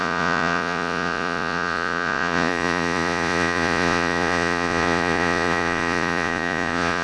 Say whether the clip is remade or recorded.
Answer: remade